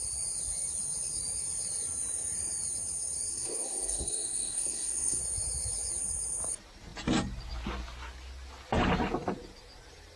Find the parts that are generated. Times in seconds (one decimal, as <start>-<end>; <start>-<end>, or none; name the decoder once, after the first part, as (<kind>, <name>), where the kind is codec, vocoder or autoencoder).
3.3-5.2 (codec, SNAC)